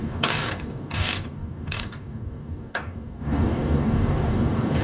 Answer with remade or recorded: remade